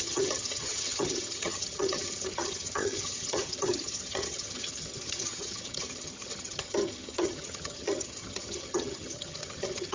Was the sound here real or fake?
fake